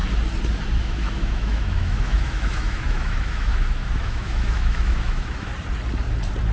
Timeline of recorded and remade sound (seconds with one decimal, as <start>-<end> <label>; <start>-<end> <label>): 0.0-0.8 recorded; 0.8-5.5 remade; 5.5-6.5 recorded